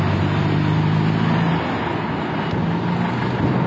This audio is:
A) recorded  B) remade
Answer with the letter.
A